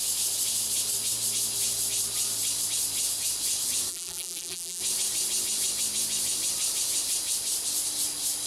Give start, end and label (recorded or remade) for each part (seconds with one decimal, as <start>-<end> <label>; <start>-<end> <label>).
0.0-3.9 recorded; 3.9-4.8 remade; 4.8-8.5 recorded